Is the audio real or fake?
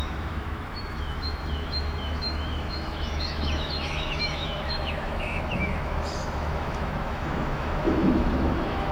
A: fake